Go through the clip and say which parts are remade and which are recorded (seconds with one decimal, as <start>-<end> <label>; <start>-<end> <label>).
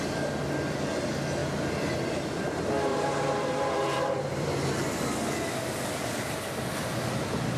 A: 0.0-2.9 recorded; 2.9-4.5 remade; 4.5-7.6 recorded